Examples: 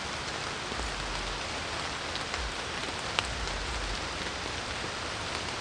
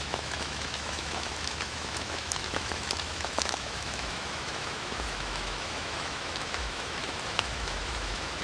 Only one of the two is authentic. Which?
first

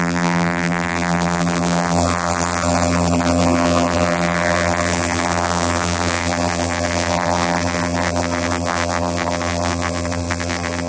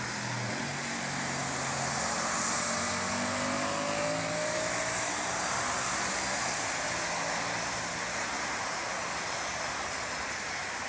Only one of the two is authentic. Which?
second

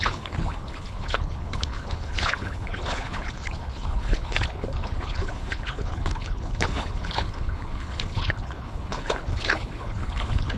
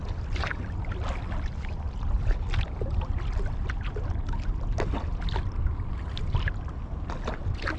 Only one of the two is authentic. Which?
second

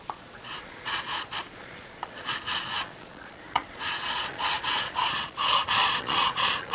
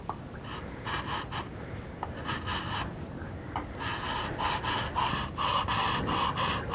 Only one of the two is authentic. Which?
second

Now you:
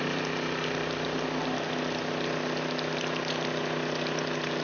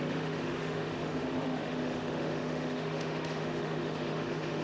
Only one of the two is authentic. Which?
first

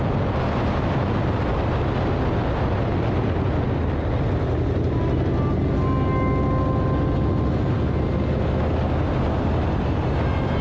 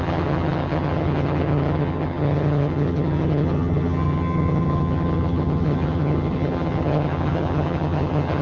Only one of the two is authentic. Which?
first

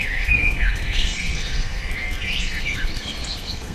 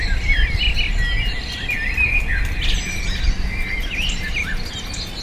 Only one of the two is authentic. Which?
second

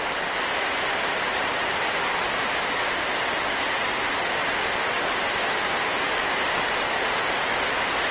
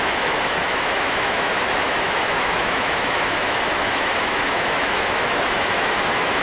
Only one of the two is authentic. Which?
first